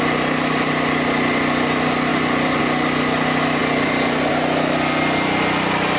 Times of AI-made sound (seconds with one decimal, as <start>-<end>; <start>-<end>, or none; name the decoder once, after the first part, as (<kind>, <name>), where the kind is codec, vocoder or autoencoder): 2.1-2.6 (vocoder, BigVGAN v2); 3.6-4.3